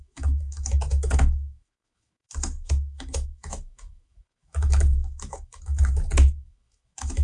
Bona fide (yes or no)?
no